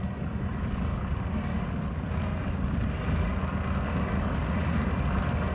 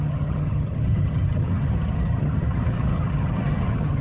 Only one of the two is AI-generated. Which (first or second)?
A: second